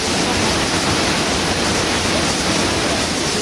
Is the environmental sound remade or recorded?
recorded